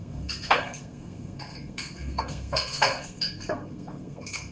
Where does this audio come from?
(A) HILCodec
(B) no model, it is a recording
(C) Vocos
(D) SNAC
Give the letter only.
D